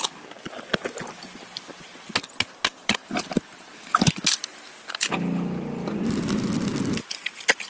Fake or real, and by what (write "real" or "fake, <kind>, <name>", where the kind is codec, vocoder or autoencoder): real